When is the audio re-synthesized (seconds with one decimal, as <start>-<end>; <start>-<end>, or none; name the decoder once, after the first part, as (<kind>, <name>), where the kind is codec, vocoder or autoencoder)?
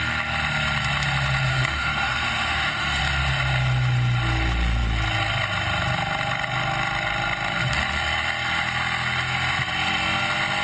1.5-3.0 (autoencoder, DAC-VAE)